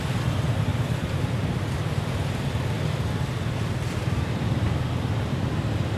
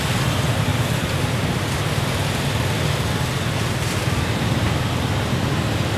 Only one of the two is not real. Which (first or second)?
first